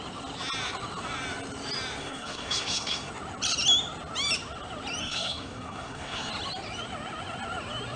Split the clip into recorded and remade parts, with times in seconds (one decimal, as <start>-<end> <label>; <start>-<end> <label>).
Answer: 0.0-2.0 recorded; 2.0-3.1 remade; 3.1-5.0 recorded; 5.0-6.3 remade; 6.3-8.0 recorded